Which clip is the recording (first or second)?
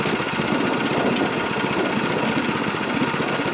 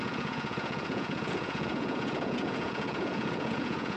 first